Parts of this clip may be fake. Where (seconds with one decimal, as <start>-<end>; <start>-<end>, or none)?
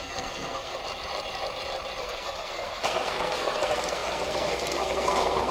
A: 0.0-0.8; 2.0-5.5